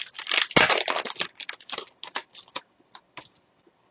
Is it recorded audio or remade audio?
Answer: recorded